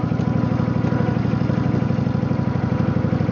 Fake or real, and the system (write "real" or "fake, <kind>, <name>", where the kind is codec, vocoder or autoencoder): real